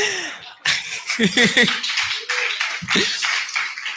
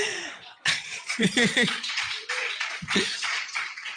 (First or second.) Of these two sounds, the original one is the first